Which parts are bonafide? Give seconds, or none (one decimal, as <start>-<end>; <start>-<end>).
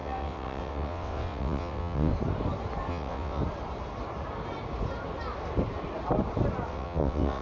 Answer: 2.1-2.9; 3.4-6.7